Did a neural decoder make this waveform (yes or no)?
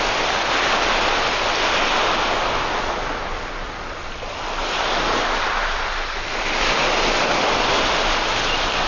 no